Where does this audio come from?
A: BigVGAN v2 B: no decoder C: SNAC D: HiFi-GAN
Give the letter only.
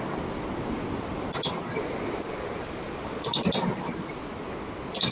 B